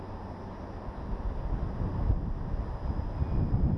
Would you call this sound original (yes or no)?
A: yes